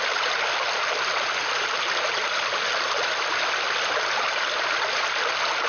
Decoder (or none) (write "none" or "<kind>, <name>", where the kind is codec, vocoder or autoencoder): none